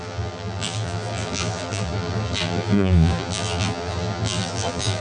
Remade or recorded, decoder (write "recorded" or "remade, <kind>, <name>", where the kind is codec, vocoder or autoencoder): remade, vocoder, BigVGAN v2